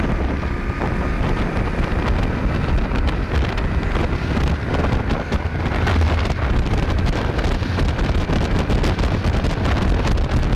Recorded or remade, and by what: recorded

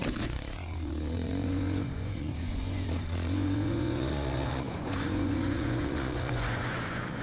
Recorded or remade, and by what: remade, vocoder, Vocos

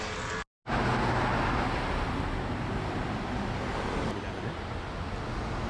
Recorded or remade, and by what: recorded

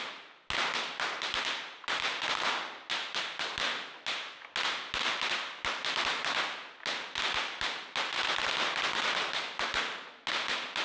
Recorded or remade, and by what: recorded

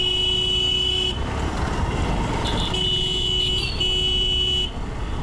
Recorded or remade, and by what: recorded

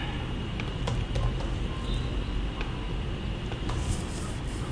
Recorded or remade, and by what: recorded